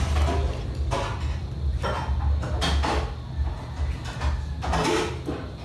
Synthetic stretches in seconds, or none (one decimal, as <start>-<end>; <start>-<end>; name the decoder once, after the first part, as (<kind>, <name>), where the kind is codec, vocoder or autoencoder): none